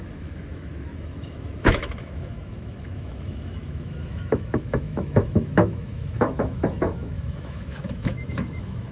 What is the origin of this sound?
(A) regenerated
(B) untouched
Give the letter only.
A